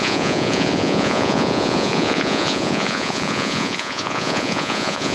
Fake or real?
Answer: fake